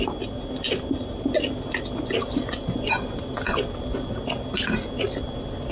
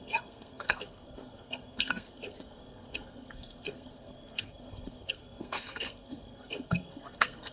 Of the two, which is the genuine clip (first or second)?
first